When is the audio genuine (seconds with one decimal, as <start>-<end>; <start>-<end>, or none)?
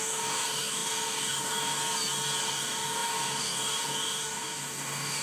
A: 1.8-2.4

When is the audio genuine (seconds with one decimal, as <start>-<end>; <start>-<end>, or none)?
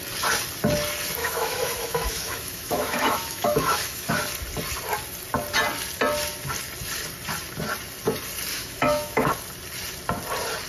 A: 0.0-1.2; 4.1-8.5; 9.3-10.7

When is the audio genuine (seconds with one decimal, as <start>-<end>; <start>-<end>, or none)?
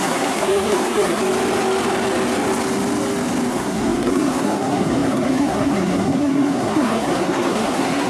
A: 1.2-3.5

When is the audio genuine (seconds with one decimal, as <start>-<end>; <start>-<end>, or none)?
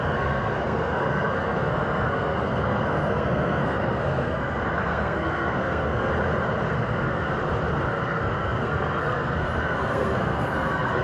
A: 6.1-6.7; 7.3-7.9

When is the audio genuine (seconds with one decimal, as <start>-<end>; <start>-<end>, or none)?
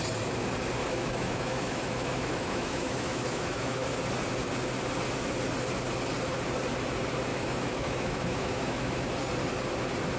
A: 0.0-0.8; 4.0-7.3; 9.1-10.2